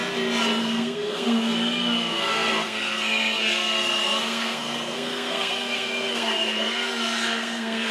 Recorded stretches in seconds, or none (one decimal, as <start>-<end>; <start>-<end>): 0.0-0.6

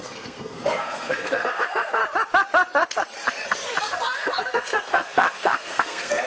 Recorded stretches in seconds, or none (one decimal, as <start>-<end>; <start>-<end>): 2.0-3.8

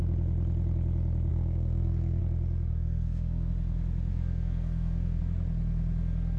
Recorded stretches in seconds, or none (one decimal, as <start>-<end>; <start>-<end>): 0.0-1.3; 2.2-2.7; 3.5-4.1; 5.2-6.4

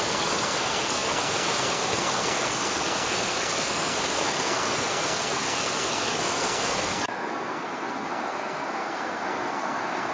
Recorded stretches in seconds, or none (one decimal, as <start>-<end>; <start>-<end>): none

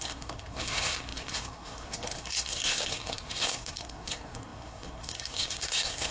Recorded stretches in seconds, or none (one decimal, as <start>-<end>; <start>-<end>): none

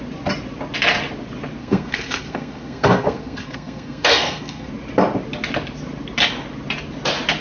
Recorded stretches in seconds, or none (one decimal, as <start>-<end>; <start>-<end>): 0.0-1.6; 4.7-7.4